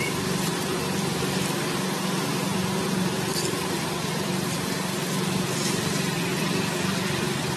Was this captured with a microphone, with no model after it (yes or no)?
no